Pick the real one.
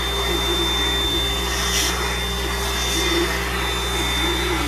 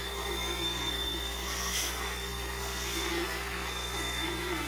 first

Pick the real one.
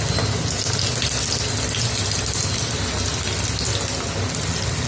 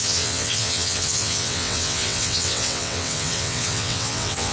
first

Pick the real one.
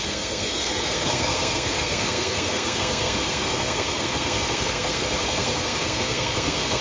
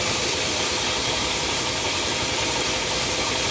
second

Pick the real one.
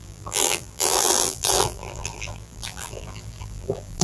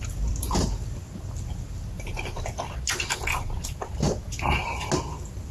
second